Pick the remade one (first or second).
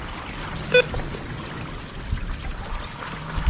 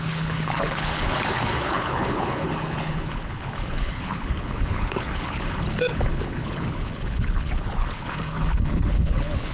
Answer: second